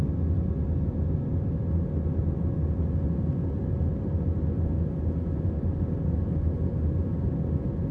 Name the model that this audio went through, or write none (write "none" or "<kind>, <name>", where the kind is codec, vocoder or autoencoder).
none